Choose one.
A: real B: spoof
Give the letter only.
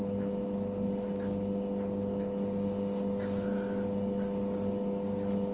A